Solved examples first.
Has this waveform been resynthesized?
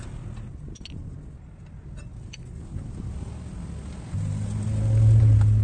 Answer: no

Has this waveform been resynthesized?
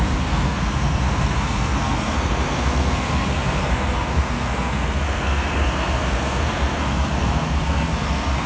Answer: yes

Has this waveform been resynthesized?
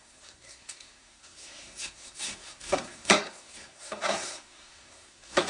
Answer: yes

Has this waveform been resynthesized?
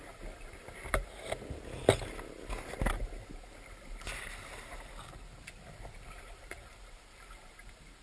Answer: no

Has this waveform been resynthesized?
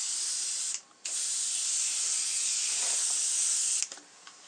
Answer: no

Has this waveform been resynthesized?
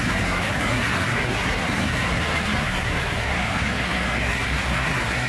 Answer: yes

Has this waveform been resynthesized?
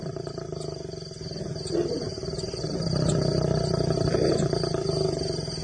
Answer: no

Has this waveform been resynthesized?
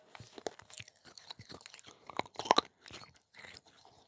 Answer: no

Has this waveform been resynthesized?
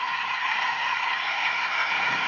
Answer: yes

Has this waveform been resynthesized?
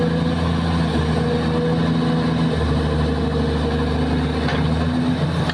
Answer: no